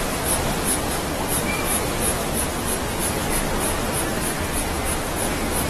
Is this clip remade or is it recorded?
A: recorded